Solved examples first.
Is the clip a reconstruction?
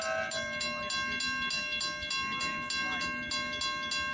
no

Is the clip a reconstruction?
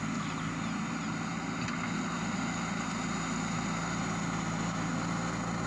no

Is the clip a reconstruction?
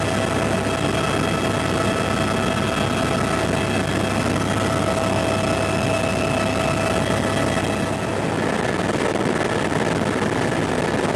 no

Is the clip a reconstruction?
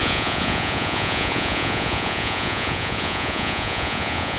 yes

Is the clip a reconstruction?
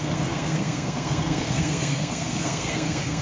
yes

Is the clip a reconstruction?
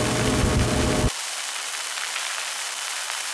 no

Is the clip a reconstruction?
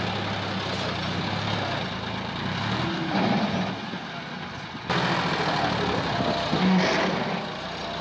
no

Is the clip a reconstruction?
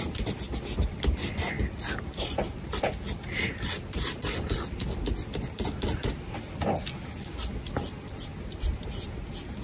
no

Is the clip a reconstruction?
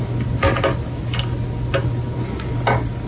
no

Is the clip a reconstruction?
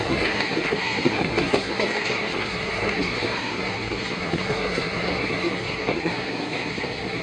yes